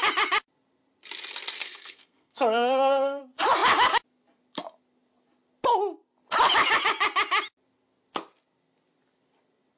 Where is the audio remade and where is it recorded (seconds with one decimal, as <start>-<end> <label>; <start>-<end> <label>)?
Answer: 0.0-1.6 recorded; 1.6-3.2 remade; 3.2-9.8 recorded